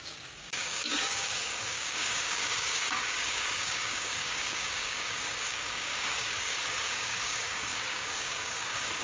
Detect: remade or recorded remade